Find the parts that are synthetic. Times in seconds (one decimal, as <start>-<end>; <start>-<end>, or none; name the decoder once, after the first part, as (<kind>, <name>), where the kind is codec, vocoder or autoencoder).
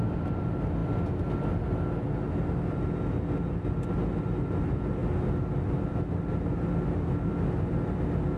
none